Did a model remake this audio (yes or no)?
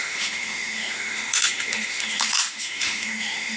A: yes